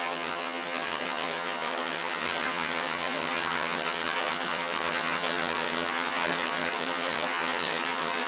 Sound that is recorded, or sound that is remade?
remade